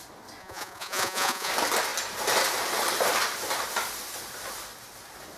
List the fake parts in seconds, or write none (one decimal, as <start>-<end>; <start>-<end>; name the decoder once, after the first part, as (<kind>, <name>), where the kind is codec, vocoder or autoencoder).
0.4-1.5 (vocoder, Vocos)